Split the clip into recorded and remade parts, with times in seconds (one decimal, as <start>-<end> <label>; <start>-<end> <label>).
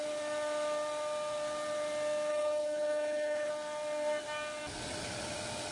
0.0-2.3 recorded; 2.3-3.5 remade; 3.5-5.7 recorded